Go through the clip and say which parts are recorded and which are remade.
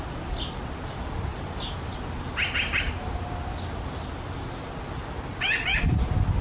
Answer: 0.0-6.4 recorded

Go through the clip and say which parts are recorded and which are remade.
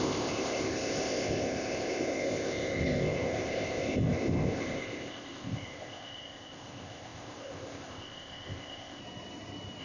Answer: 0.0-9.0 remade; 9.0-9.8 recorded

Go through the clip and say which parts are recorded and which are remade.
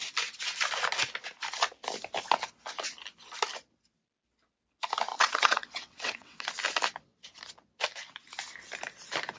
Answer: 0.0-5.1 recorded; 5.1-6.5 remade; 6.5-9.4 recorded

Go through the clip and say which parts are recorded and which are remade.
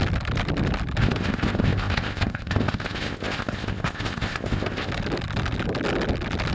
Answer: 0.0-1.0 recorded; 1.0-4.9 remade; 4.9-6.5 recorded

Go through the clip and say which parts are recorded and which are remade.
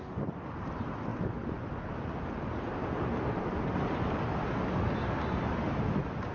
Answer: 0.0-6.3 recorded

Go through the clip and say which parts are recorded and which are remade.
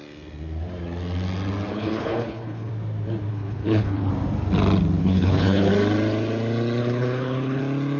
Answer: 0.0-1.7 recorded; 1.7-2.7 remade; 2.7-3.3 recorded; 3.3-4.1 remade; 4.1-5.0 recorded; 5.0-5.7 remade; 5.7-6.8 recorded; 6.8-7.6 remade; 7.6-8.0 recorded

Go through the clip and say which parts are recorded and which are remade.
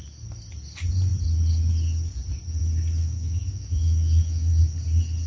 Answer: 0.0-3.0 recorded; 3.0-4.6 remade; 4.6-5.3 recorded